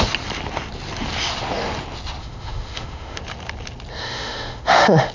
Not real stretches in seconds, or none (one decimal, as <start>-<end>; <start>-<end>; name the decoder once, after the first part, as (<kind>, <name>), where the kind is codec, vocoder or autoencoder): 2.2-3.2 (autoencoder, DAC-VAE); 4.0-5.1